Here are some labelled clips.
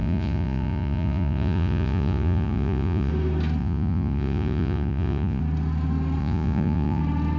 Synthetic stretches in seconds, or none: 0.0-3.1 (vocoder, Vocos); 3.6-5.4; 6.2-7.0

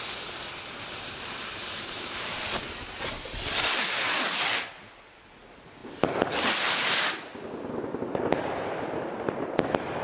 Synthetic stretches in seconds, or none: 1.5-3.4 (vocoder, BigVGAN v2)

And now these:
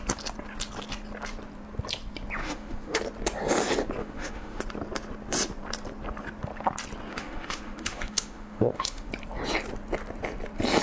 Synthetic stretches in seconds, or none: 2.4-3.0 (autoencoder, DAC-VAE); 4.0-4.6; 7.1-9.1

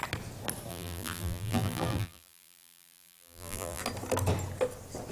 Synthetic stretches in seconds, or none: 0.7-3.8 (vocoder, BigVGAN v2)

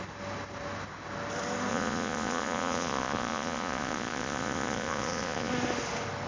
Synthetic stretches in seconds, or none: 1.7-5.5 (vocoder, Vocos)

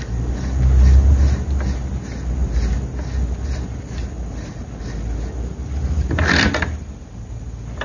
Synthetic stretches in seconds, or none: none